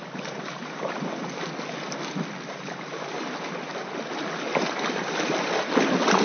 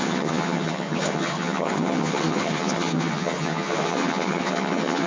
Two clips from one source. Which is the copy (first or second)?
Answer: second